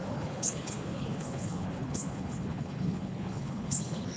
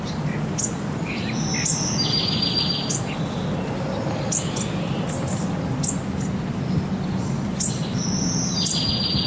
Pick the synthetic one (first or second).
first